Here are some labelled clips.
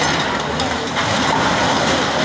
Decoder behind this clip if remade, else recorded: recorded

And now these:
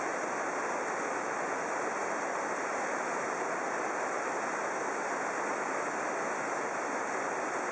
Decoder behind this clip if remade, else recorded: recorded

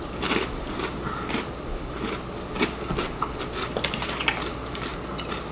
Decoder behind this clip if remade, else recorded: recorded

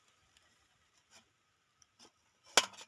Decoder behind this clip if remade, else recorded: recorded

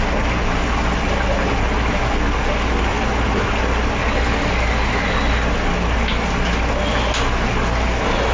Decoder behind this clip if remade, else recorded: recorded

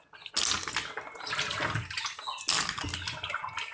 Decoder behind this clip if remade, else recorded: recorded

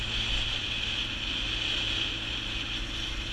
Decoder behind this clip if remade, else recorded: recorded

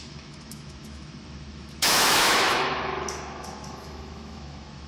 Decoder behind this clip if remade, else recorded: remade, autoencoder, DAC-VAE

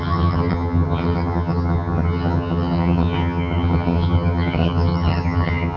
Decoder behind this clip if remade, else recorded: remade, vocoder, HiFi-GAN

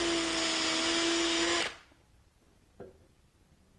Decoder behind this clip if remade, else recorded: recorded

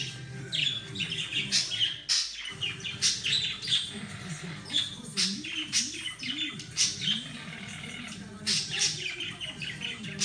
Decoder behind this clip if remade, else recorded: recorded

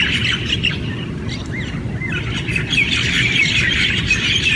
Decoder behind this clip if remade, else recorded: recorded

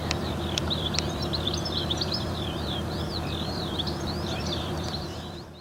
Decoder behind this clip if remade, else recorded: remade, vocoder, BigVGAN v2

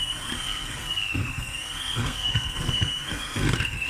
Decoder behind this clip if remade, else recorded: remade, codec, SNAC